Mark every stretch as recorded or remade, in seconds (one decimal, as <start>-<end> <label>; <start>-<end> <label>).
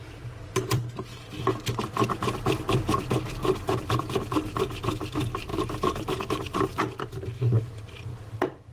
0.0-1.1 remade; 1.1-2.1 recorded; 2.1-3.4 remade; 3.4-4.0 recorded; 4.0-6.7 remade; 6.7-7.6 recorded; 7.6-8.7 remade